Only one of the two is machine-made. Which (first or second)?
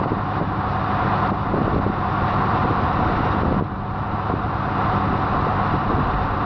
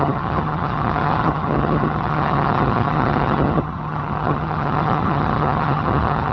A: second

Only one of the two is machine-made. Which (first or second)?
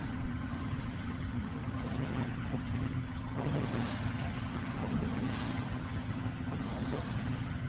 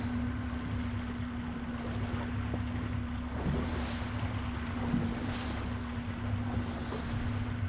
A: first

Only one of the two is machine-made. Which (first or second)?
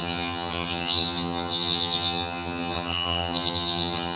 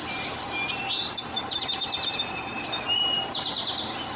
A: first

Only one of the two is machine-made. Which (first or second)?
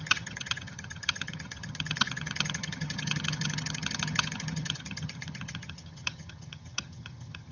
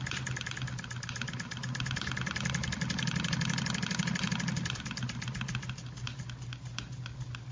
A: first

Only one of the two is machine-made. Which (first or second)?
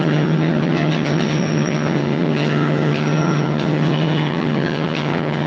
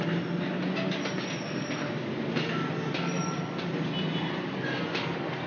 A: first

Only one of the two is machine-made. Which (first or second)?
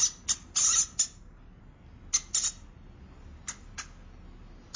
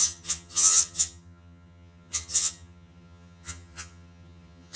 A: second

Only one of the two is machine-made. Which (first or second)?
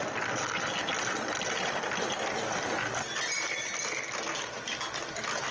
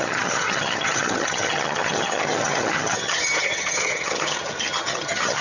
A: second